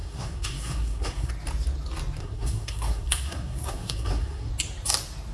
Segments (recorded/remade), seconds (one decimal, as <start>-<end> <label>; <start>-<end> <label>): 0.0-1.3 remade; 1.3-2.2 recorded; 2.2-4.5 remade; 4.5-5.3 recorded

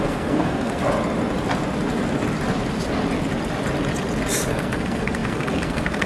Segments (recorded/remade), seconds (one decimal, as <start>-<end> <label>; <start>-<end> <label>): 0.0-0.8 remade; 0.8-4.5 recorded; 4.5-6.1 remade

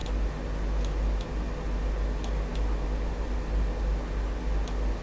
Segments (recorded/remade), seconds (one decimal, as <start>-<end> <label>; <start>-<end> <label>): 0.0-5.0 recorded

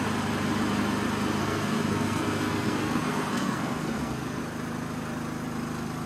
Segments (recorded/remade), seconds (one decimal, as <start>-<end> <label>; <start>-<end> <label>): 0.0-1.4 recorded; 1.4-4.4 remade; 4.4-6.1 recorded

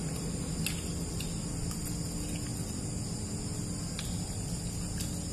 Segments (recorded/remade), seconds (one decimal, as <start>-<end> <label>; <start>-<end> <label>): 0.0-5.3 recorded

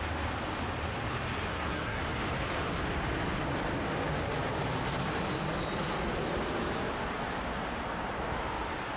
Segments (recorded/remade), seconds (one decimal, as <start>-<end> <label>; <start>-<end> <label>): 0.0-1.5 recorded; 1.5-2.0 remade; 2.0-9.0 recorded

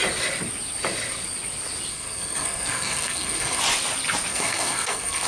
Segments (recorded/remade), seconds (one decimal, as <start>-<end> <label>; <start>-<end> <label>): 0.0-1.9 recorded; 1.9-3.6 remade; 3.6-4.3 recorded; 4.3-5.3 remade